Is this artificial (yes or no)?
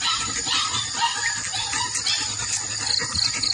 no